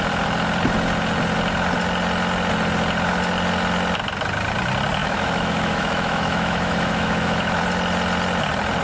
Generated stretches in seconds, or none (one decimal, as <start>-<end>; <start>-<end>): 5.0-7.6